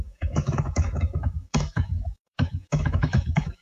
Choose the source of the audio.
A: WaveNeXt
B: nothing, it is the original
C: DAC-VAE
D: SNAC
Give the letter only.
C